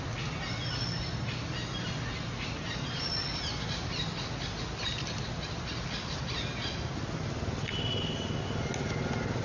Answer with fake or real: real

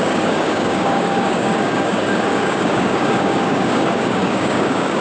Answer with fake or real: fake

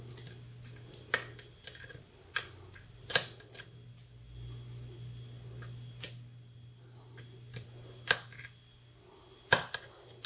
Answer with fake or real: real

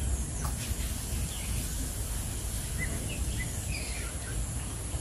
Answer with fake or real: real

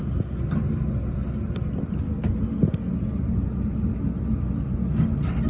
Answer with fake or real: real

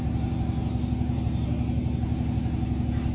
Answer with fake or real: real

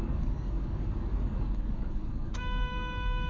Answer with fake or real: fake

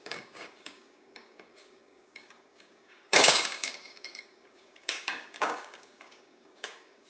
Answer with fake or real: fake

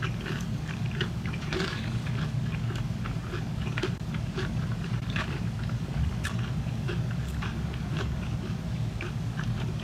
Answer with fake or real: fake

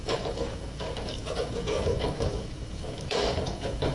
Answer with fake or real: fake